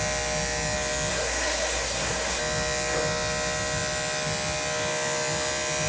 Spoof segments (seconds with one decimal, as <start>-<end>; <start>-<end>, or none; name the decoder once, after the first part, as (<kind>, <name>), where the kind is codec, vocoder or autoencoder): 1.1-2.4 (codec, SNAC)